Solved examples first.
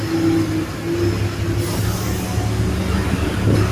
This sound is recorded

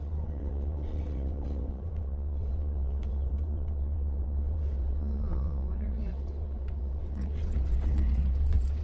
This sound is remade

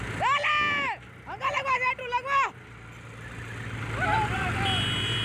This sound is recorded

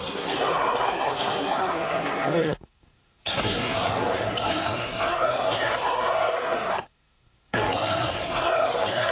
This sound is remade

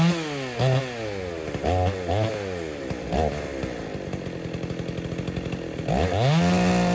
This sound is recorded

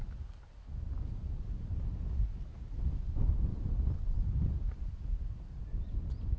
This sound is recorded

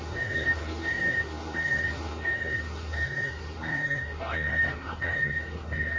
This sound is remade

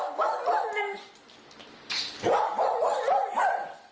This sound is recorded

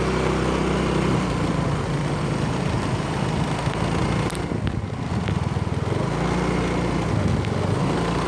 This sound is recorded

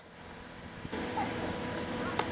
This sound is recorded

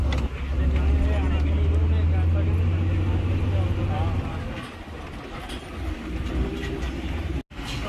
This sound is recorded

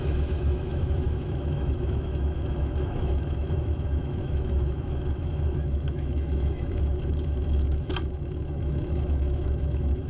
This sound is remade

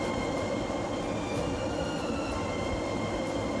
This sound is recorded